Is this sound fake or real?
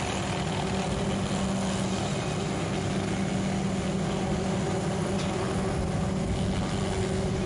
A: real